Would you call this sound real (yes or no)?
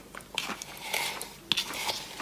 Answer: yes